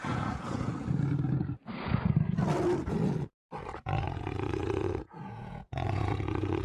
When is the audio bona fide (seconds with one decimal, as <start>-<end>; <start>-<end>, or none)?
0.7-3.8